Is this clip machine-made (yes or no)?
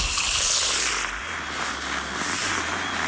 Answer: no